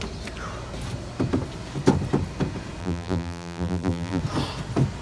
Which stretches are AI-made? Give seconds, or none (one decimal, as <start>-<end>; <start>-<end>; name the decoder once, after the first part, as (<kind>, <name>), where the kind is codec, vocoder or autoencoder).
2.8-4.2 (vocoder, BigVGAN v2)